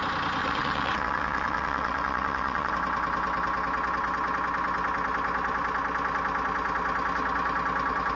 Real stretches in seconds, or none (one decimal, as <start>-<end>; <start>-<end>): 0.0-0.4; 2.7-8.2